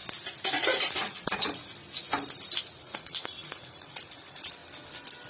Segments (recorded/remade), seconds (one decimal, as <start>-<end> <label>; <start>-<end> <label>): 0.0-0.6 recorded; 0.6-1.6 remade; 1.6-2.6 recorded; 2.6-4.6 remade; 4.6-5.3 recorded